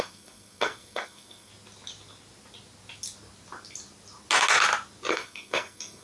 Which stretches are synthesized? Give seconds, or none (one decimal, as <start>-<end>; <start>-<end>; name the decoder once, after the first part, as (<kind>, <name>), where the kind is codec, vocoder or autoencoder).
0.0-1.5 (codec, SNAC); 5.1-6.0